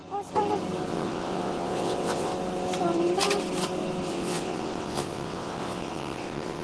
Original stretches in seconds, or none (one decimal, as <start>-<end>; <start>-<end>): 0.0-0.9; 2.3-4.1